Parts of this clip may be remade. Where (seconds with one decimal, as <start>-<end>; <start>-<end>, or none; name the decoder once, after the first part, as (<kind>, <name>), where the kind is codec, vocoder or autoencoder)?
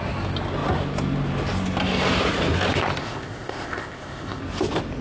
3.0-4.4 (codec, ZipCodec)